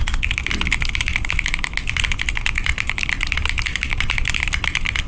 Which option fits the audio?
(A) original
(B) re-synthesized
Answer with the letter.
A